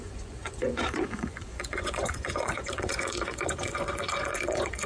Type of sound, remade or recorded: remade